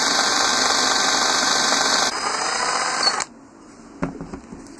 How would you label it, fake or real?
real